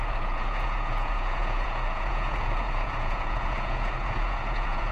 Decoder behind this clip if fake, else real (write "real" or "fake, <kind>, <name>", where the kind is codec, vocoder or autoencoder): fake, vocoder, Vocos